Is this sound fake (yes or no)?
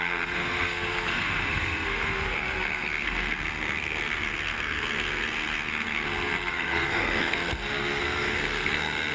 yes